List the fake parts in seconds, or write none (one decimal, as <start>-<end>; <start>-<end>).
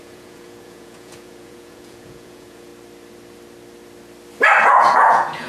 0.0-2.7; 4.6-5.5